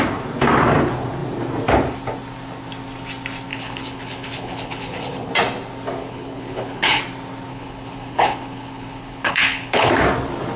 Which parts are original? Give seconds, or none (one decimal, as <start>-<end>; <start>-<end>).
0.0-3.5; 5.3-6.0; 7.0-7.5; 9.9-10.6